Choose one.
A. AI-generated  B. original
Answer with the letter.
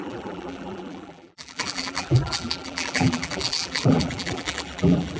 A